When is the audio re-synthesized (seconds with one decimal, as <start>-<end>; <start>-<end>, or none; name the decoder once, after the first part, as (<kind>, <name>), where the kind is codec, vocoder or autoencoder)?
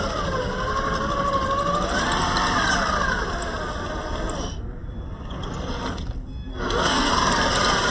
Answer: 6.5-7.1 (codec, SNAC)